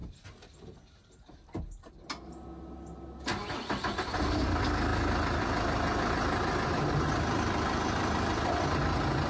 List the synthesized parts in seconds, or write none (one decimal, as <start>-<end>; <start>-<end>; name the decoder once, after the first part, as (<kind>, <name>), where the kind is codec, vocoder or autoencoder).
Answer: none